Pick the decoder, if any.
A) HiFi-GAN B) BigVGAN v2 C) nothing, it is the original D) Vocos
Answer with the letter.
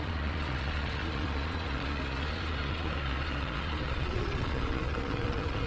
D